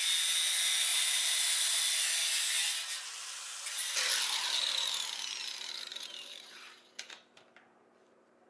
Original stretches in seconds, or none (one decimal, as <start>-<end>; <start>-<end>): 0.0-0.9; 1.8-5.9; 7.0-8.5